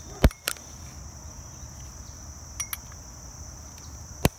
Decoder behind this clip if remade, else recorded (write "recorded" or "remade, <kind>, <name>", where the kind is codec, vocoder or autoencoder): recorded